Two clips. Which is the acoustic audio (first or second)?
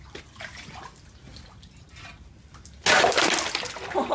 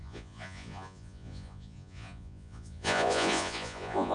first